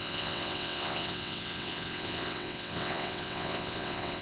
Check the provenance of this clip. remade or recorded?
remade